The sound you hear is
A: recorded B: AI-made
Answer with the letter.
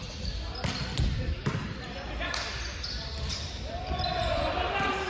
A